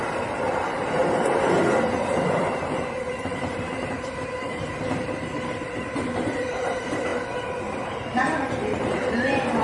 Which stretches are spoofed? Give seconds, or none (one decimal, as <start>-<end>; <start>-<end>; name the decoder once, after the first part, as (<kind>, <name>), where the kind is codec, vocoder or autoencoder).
0.0-1.0 (vocoder, BigVGAN v2); 2.1-7.1; 8.2-9.6